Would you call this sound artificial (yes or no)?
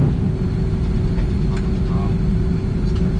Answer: no